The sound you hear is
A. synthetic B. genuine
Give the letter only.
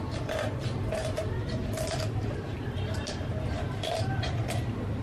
A